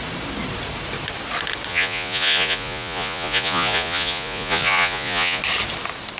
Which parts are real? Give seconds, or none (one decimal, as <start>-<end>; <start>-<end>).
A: 0.0-1.7; 5.4-6.2